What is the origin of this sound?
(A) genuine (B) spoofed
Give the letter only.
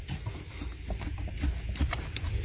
A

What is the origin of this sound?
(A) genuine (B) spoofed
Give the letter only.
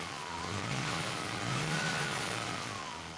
B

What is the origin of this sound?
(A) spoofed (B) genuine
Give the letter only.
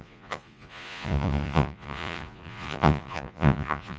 A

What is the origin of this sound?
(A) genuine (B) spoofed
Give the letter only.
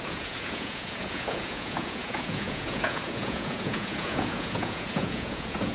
B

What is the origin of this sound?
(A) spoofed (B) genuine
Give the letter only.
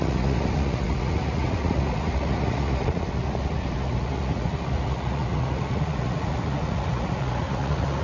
A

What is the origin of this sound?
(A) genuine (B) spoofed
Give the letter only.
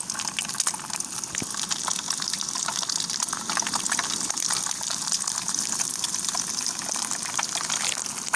A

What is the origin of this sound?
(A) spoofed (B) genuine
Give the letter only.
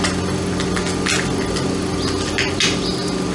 B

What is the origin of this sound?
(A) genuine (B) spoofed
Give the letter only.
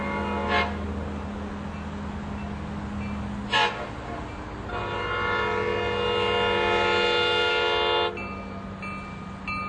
A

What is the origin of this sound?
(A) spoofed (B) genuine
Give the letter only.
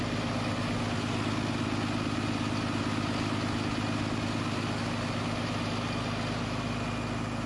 B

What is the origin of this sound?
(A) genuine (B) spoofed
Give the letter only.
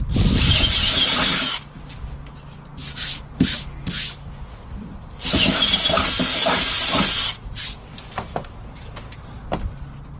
A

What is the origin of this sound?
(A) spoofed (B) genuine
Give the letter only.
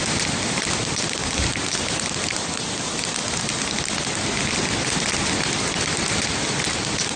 B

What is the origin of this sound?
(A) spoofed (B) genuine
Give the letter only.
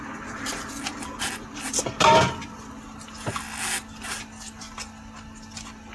B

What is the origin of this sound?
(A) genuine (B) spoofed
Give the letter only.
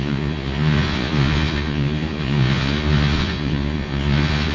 B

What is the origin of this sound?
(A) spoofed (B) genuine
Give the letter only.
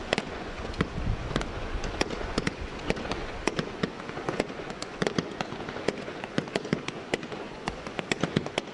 A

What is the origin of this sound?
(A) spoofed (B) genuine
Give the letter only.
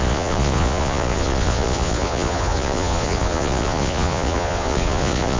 A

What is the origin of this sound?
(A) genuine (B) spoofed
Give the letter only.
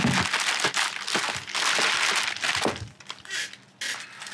A